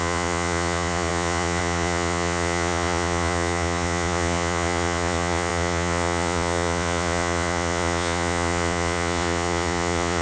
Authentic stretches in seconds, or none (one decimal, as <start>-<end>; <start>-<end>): none